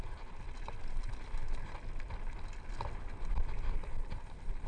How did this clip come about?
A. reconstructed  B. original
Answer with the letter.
B